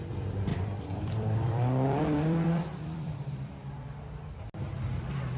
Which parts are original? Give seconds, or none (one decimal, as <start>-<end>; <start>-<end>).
0.0-0.5; 3.7-5.4